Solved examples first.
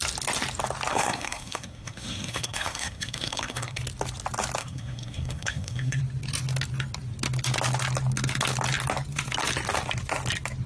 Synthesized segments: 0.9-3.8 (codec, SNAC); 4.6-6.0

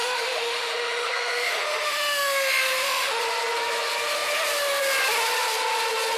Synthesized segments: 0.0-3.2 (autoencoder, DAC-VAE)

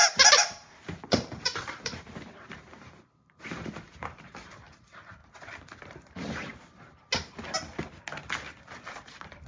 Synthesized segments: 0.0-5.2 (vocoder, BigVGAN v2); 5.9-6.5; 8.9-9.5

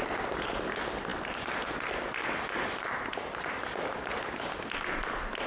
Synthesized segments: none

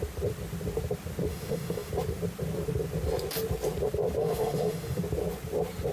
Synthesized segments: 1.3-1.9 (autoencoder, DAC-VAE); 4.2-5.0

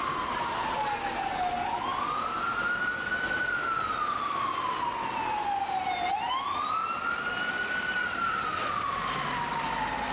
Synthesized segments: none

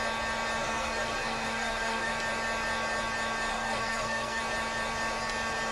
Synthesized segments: 0.6-2.1 (codec, SNAC); 3.5-4.4